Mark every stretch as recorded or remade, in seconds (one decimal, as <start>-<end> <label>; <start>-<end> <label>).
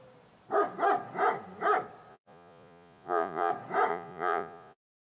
0.0-2.1 recorded; 2.1-3.5 remade; 3.5-3.9 recorded; 3.9-5.0 remade